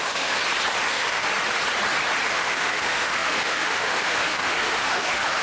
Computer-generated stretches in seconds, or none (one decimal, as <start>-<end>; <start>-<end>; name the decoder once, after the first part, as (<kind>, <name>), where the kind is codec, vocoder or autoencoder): 0.0-0.4 (autoencoder, DAC-VAE); 0.9-1.3; 2.3-5.4